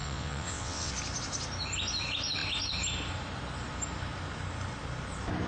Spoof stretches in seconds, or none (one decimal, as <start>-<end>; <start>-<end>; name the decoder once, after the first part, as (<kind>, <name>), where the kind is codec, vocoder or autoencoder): 0.0-0.9 (vocoder, WaveNeXt)